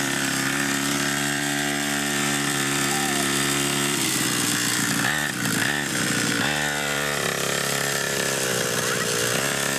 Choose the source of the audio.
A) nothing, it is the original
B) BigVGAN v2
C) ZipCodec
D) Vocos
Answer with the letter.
B